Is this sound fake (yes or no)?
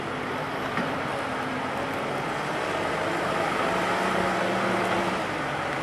yes